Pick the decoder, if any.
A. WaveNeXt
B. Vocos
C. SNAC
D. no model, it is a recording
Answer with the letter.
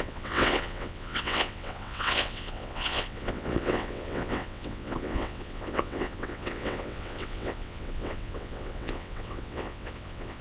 A